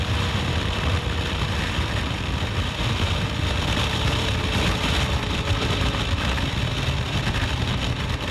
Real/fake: fake